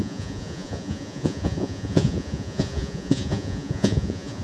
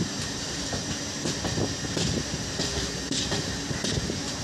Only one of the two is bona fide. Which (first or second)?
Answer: second